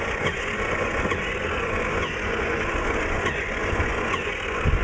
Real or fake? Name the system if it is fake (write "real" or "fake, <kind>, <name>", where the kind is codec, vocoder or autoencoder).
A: fake, vocoder, Vocos